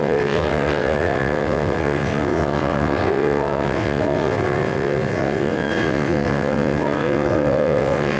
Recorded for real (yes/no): no